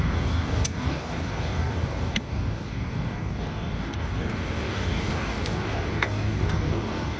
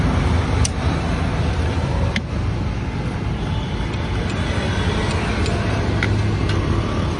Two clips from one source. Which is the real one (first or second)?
second